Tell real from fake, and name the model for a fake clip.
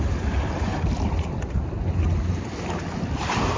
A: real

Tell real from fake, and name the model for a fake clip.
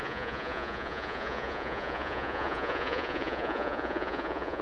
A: fake, vocoder, Vocos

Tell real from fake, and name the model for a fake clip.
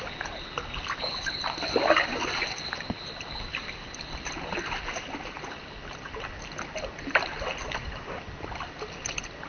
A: real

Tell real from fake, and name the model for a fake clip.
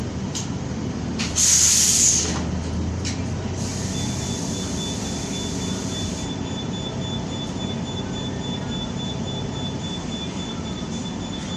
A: real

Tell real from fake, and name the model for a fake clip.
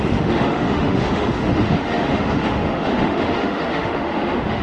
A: fake, autoencoder, DAC-VAE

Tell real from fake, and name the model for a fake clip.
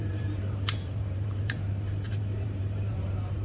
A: fake, vocoder, BigVGAN v2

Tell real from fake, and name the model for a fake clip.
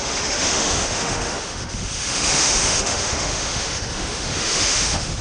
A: fake, autoencoder, DAC-VAE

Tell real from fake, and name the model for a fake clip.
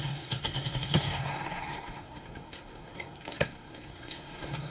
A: fake, codec, SNAC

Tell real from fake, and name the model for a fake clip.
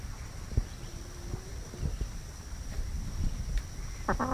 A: real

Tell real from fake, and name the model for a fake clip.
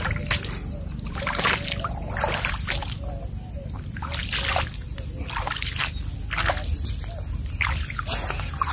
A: real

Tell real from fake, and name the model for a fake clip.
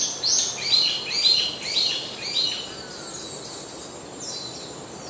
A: real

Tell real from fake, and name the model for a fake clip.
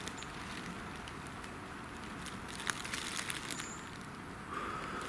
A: real